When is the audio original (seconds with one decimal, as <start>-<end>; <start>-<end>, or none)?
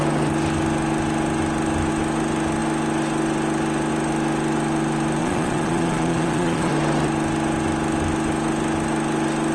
0.0-5.2; 6.7-9.5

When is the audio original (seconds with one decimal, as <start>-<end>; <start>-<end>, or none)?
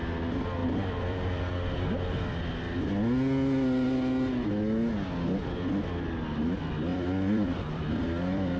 0.0-0.6; 1.4-6.9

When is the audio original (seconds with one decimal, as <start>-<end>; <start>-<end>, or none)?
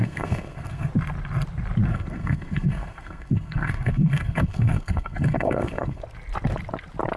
0.9-1.9; 6.0-7.2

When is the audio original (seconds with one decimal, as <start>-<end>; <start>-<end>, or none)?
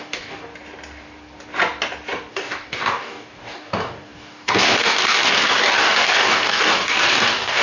0.5-2.3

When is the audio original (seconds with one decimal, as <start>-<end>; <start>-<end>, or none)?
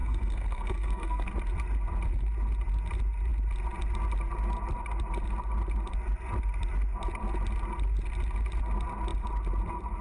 1.3-10.0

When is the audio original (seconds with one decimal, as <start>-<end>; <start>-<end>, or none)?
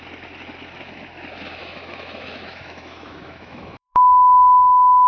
0.0-1.6